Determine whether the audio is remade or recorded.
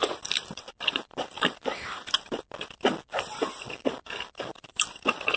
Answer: remade